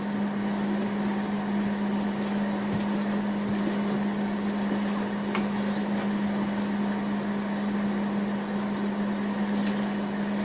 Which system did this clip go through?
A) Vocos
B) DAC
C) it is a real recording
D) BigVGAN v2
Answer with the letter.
C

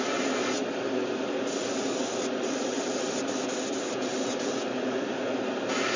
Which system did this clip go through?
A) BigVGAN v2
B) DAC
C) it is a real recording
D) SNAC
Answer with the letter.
C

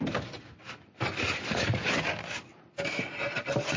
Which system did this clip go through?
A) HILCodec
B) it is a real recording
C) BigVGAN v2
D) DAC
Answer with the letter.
B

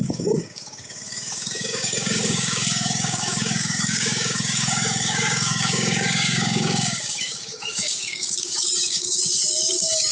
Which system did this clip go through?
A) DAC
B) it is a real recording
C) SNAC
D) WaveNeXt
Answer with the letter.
A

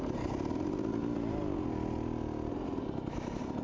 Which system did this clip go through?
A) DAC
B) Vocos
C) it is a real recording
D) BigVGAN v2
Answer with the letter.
C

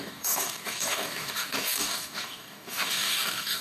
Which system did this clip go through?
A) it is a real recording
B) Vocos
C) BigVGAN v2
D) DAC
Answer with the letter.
D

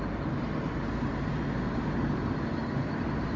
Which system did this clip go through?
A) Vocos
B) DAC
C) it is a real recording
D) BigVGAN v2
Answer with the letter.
C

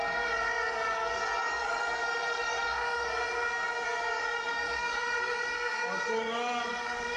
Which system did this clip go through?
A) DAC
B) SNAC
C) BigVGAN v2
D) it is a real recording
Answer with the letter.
A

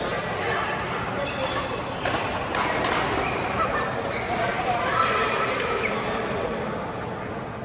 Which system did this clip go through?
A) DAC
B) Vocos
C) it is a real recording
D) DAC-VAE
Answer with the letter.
C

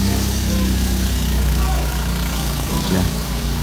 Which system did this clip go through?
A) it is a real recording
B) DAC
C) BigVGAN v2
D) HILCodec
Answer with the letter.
B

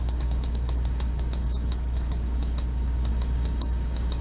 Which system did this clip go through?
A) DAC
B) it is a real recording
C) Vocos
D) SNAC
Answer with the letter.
A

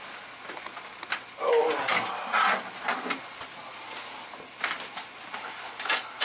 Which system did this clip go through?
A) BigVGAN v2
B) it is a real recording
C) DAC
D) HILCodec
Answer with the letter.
B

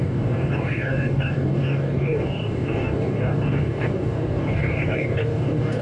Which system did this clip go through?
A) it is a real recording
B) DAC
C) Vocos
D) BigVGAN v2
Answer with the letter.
B